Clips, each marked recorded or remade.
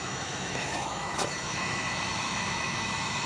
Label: remade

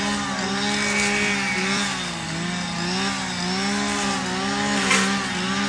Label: recorded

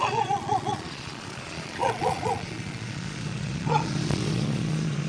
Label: remade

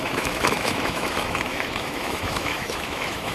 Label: remade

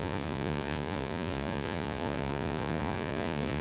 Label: remade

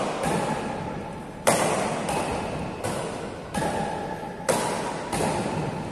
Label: recorded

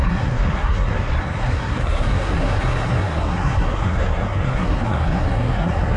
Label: remade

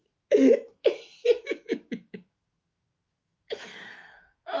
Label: remade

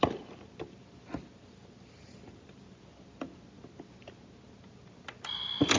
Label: recorded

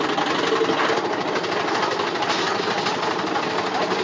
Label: recorded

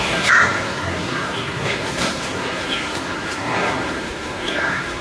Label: remade